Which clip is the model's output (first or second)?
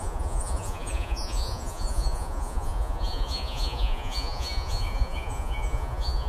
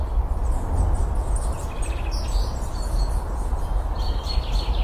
first